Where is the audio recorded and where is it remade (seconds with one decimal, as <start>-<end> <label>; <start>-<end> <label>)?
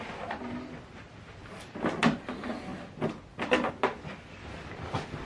0.0-5.3 recorded